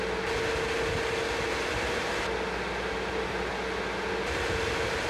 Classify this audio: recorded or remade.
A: recorded